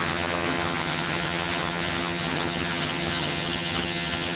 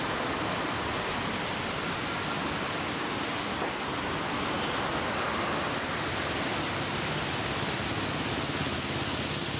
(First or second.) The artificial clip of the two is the first